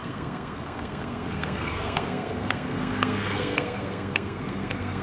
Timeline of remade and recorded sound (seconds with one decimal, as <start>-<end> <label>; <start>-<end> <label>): 0.0-5.0 remade